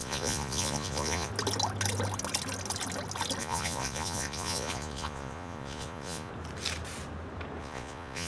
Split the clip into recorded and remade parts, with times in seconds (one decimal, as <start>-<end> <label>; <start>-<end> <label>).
0.0-1.3 remade; 1.3-3.4 recorded; 3.4-6.3 remade; 6.3-7.6 recorded; 7.6-8.3 remade